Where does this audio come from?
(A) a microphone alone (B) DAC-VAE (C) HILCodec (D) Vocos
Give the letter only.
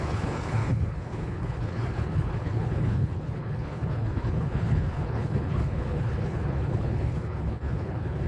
C